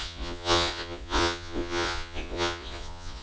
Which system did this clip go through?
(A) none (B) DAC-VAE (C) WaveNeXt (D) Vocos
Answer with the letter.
D